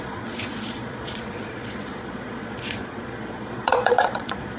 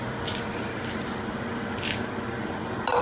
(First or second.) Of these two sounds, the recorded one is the second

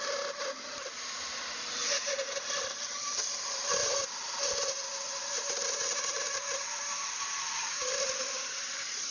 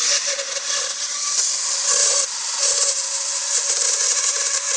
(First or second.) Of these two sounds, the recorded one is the second